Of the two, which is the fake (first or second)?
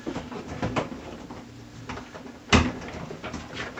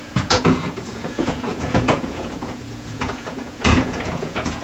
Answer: second